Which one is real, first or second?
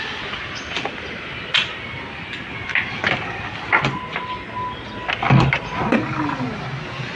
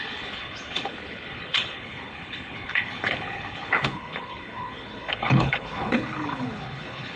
first